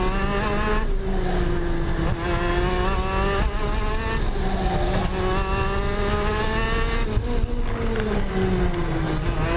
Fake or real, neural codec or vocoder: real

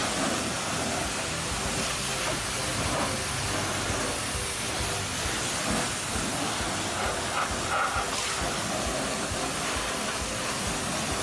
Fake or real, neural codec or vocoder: real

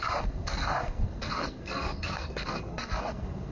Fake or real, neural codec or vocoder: fake, codec, SNAC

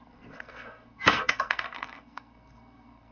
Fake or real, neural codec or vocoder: fake, codec, SNAC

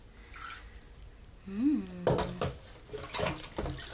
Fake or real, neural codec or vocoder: real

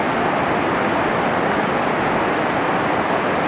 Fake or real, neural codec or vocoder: real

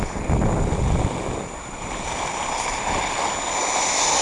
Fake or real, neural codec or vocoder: real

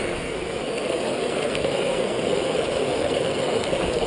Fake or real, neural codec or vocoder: fake, codec, SNAC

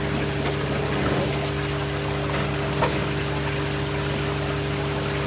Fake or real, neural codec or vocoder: real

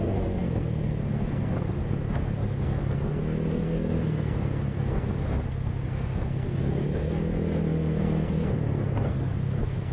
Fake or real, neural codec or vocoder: fake, codec, SNAC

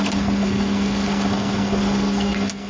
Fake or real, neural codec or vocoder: fake, codec, SNAC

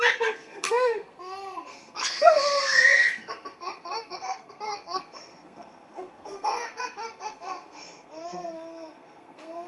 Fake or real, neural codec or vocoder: fake, codec, SNAC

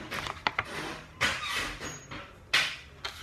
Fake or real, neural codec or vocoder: real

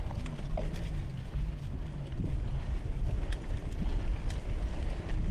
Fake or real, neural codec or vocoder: real